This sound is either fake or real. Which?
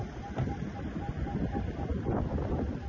real